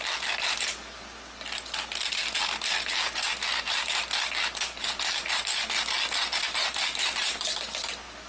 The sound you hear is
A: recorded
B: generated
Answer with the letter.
A